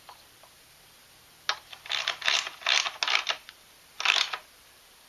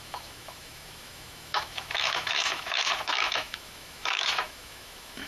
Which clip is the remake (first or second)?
second